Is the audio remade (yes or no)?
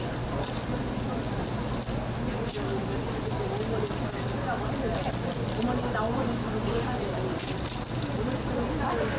no